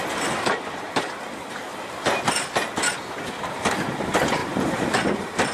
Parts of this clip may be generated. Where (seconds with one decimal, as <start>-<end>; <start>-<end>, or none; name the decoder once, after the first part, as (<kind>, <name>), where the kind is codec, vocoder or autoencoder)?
none